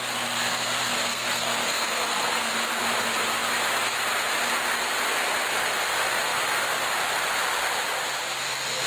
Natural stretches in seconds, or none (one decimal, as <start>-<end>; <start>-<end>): 0.0-1.1; 2.5-8.9